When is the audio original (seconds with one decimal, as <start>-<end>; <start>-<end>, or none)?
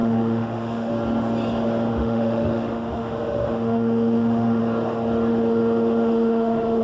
0.9-1.9; 4.6-5.3